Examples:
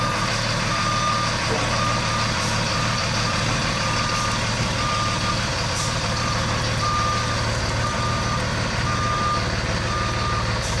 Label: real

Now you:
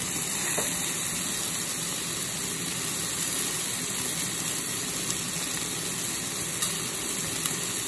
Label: real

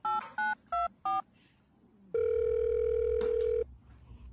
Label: real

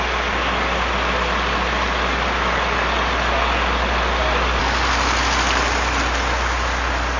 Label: real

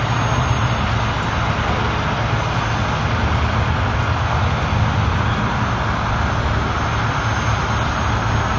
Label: real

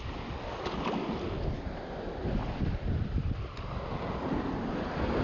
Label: real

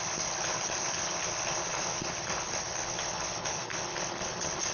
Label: fake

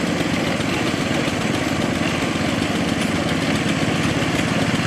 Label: real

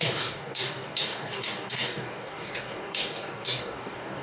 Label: fake